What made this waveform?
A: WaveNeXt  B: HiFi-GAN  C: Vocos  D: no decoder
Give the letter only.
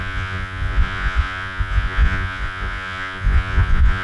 C